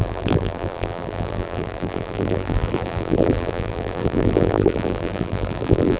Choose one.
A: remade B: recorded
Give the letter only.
A